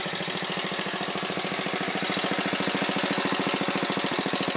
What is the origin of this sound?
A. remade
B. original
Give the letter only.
B